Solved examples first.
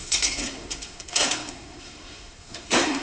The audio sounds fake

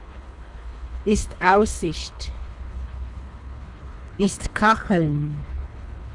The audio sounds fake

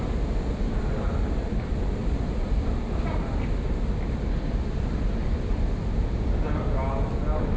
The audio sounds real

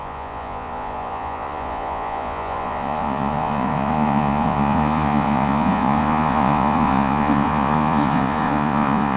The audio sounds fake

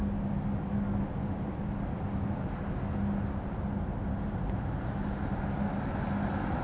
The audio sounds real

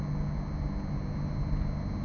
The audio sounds real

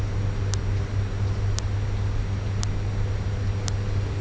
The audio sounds real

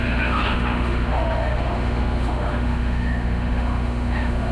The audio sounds fake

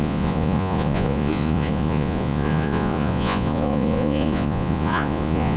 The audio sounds fake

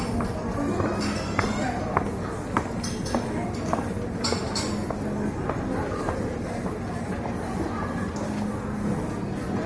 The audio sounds real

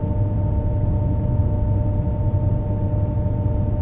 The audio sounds real